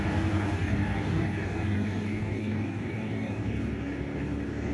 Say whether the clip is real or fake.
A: fake